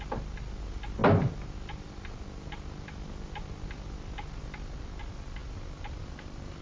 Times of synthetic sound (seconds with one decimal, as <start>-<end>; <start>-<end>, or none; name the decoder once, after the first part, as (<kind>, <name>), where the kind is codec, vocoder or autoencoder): none